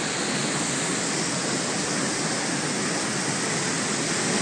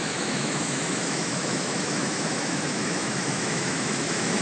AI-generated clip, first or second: second